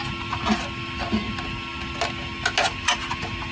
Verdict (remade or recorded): recorded